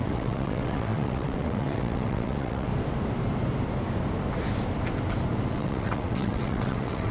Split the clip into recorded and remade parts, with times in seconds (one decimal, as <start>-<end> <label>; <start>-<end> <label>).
0.0-2.7 remade; 2.7-5.5 recorded; 5.5-7.1 remade